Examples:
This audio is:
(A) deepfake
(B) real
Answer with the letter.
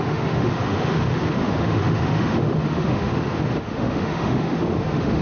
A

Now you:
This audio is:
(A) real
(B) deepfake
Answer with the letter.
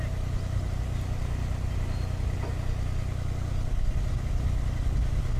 A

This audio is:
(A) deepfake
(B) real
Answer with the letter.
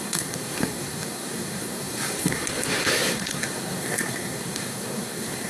A